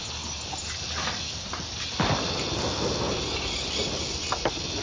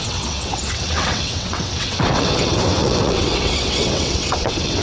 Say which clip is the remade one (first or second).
second